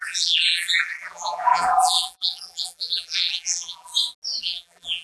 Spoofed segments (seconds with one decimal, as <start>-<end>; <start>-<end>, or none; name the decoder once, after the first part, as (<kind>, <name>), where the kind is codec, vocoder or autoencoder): 0.0-3.9 (vocoder, BigVGAN v2); 4.4-5.0